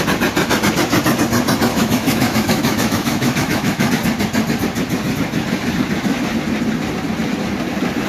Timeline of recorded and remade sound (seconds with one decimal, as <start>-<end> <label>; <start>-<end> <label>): 0.0-1.7 recorded; 1.7-3.9 remade; 3.9-8.1 recorded